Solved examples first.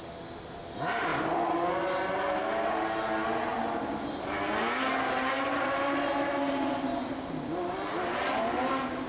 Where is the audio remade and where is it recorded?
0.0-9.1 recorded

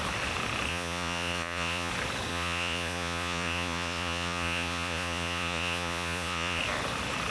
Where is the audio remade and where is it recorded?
0.0-0.7 recorded; 0.7-1.9 remade; 1.9-2.3 recorded; 2.3-6.6 remade; 6.6-7.3 recorded

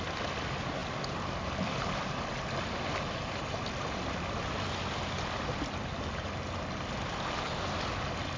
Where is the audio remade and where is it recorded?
0.0-8.4 recorded

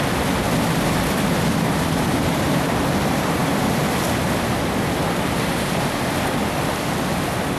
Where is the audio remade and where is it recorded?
0.0-7.6 recorded

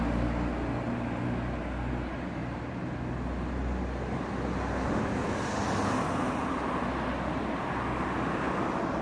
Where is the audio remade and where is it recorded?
0.0-9.0 recorded

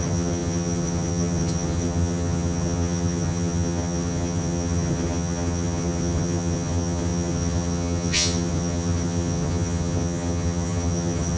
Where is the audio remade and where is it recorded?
0.0-11.4 remade